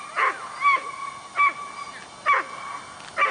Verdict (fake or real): real